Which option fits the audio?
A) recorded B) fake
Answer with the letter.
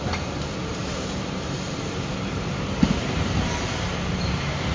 B